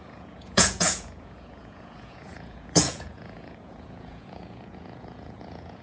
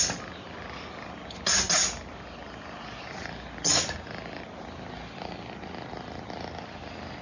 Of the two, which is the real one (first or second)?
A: second